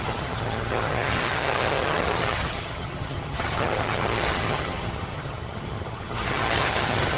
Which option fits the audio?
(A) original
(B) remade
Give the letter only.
B